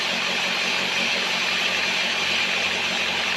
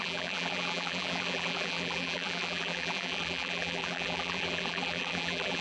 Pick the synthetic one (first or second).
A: second